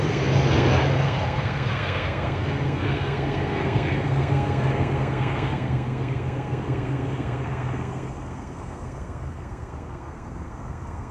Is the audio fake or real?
fake